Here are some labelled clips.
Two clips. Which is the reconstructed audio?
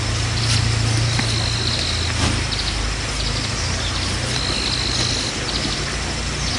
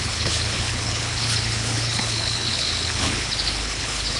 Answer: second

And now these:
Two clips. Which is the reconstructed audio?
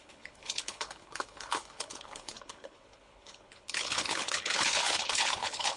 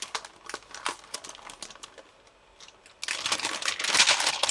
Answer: first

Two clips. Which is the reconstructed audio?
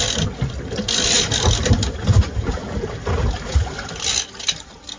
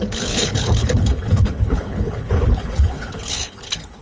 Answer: second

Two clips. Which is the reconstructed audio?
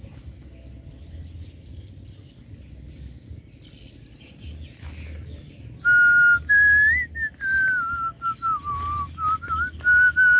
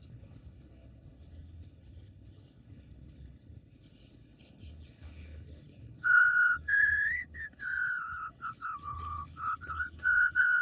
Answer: second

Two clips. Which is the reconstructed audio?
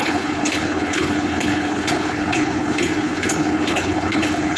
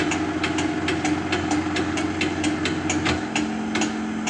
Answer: first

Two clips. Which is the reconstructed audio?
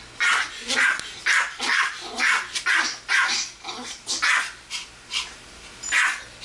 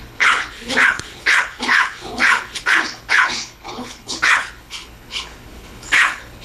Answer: second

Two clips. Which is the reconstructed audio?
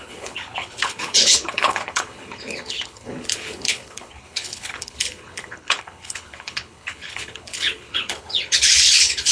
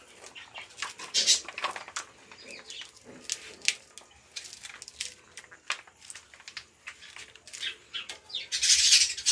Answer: first